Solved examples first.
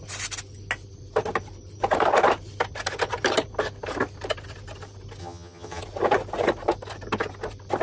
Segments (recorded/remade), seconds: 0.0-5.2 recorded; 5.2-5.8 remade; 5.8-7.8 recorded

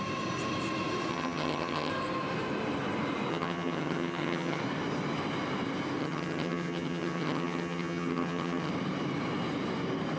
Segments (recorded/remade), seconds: 0.0-1.1 recorded; 1.1-1.9 remade; 1.9-3.3 recorded; 3.3-4.6 remade; 4.6-6.0 recorded; 6.0-8.7 remade; 8.7-10.2 recorded

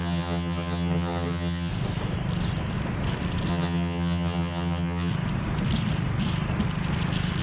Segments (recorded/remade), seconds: 0.0-1.7 remade; 1.7-3.5 recorded; 3.5-5.1 remade; 5.1-7.4 recorded

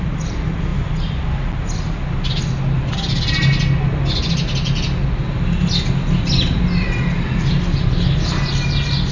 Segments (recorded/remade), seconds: 0.0-9.1 recorded

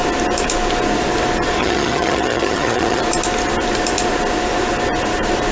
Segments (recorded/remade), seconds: 0.0-1.6 recorded; 1.6-3.0 remade; 3.0-5.5 recorded

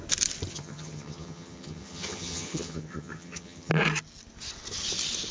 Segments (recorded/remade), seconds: 0.0-0.5 recorded; 0.5-3.7 remade; 3.7-5.3 recorded

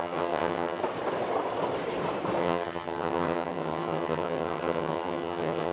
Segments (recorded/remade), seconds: 0.0-0.8 remade; 0.8-2.4 recorded; 2.4-5.7 remade

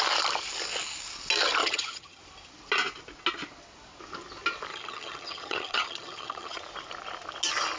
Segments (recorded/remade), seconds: 0.0-1.6 recorded; 1.6-2.2 remade; 2.2-4.7 recorded; 4.7-6.6 remade; 6.6-7.8 recorded